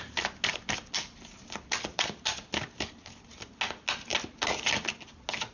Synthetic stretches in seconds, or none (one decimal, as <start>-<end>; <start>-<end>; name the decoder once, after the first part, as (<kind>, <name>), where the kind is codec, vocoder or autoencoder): none

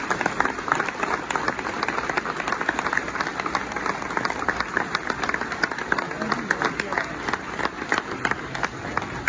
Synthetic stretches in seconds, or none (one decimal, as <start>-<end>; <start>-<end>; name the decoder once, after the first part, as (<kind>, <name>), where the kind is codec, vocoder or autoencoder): none

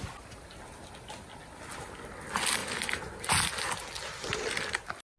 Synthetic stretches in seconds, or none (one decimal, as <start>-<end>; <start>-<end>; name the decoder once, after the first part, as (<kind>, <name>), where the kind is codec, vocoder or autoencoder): none

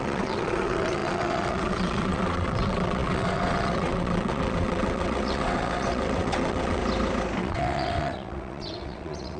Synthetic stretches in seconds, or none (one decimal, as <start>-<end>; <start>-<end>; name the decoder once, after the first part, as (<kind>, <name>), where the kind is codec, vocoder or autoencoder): 0.0-6.8 (vocoder, WaveNeXt); 7.4-9.4

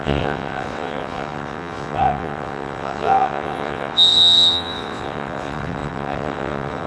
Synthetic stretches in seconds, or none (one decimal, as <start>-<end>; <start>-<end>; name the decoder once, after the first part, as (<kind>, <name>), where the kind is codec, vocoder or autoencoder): 0.0-6.9 (vocoder, WaveNeXt)

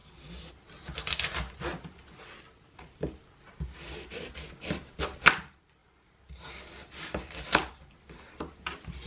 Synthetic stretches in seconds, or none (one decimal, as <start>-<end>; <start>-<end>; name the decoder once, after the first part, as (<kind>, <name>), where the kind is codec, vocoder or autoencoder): none

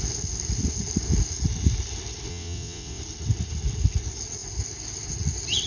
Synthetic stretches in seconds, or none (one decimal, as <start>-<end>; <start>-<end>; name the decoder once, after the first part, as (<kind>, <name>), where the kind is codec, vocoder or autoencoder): 2.3-3.0 (vocoder, WaveNeXt)

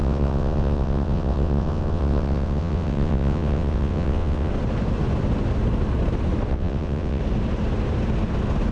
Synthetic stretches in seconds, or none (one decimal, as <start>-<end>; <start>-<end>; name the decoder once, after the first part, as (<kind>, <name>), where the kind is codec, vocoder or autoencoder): 0.0-4.5 (vocoder, WaveNeXt); 6.5-7.2